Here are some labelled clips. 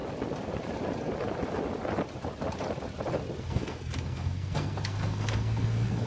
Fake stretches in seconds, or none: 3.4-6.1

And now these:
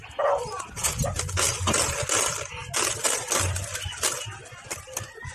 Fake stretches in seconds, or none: none